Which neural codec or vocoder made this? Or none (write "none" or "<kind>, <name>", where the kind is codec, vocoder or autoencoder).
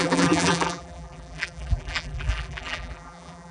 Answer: vocoder, BigVGAN v2